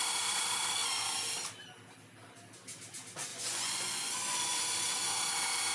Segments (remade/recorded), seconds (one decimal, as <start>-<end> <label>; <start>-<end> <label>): 0.0-3.3 recorded; 3.3-4.6 remade; 4.6-5.7 recorded